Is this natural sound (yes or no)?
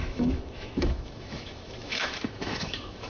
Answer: no